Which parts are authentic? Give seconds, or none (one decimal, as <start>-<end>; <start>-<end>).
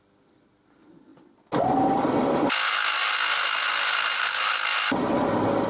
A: 0.0-5.7